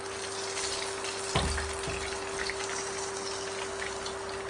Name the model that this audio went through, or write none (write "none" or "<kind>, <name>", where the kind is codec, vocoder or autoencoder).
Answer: none